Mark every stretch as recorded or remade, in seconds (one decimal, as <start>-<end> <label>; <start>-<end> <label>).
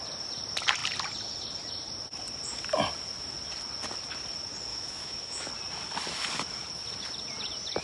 0.0-4.7 recorded; 4.7-5.5 remade; 5.5-7.8 recorded